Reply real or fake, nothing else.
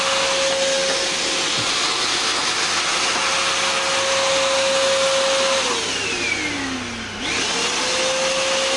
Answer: real